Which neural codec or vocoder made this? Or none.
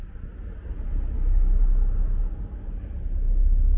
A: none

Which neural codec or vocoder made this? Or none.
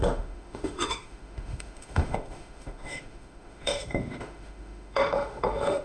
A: autoencoder, DAC-VAE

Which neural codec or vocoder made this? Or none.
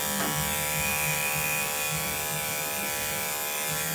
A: none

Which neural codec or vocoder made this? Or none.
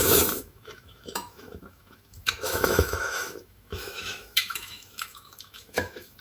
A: autoencoder, DAC-VAE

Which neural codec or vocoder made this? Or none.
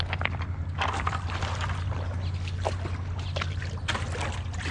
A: none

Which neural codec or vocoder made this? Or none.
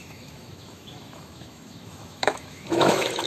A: autoencoder, DAC-VAE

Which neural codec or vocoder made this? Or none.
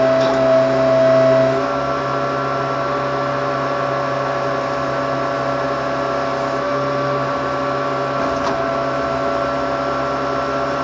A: none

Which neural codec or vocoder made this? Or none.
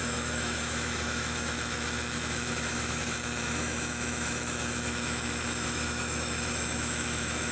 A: autoencoder, DAC-VAE